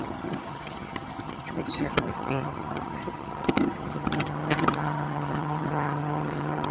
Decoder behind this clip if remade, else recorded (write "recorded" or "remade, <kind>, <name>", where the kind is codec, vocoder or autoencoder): remade, vocoder, HiFi-GAN